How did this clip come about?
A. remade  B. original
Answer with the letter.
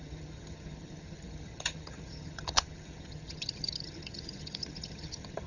A